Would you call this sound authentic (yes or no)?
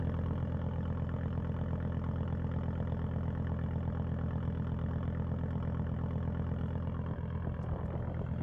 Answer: yes